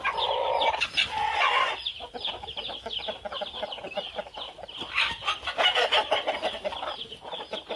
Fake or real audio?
real